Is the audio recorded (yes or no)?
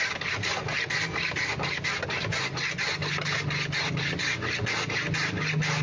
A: yes